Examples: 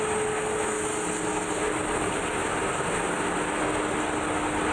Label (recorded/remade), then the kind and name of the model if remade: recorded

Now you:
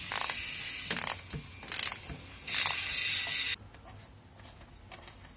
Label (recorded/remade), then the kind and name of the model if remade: recorded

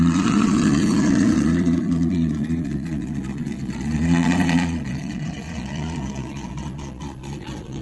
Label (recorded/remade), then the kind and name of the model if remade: remade, vocoder, Vocos